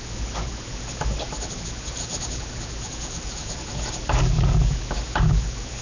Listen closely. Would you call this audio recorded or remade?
recorded